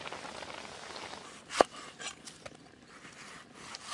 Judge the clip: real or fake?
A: real